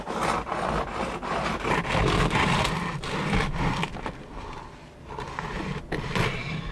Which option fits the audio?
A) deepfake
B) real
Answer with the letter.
B